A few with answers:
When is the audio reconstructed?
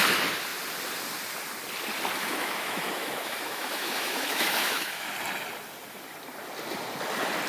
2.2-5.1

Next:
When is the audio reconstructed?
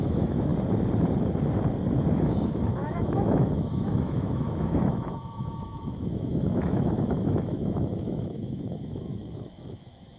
0.0-0.5; 2.1-10.2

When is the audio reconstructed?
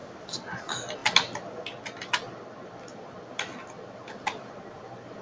none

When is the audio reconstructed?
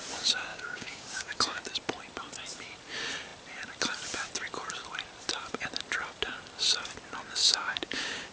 0.5-1.6; 7.4-8.3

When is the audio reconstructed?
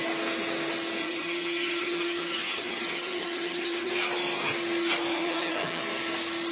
1.0-3.9; 5.1-5.8